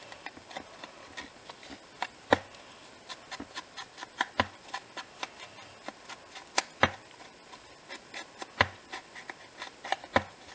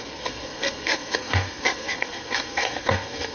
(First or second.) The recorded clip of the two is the first